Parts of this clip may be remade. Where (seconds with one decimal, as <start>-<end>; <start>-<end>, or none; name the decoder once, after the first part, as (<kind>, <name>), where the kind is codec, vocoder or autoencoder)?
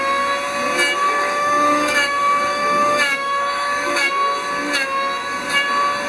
1.0-4.1 (autoencoder, DAC-VAE)